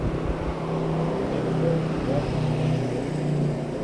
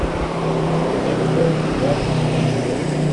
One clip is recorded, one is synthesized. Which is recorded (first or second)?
first